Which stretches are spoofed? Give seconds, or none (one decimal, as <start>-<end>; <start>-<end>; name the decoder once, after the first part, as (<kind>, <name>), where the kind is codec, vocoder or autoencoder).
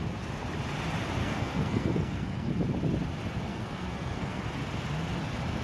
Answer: 1.2-2.5 (codec, SNAC); 3.5-4.4